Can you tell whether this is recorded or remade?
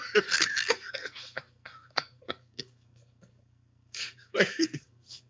remade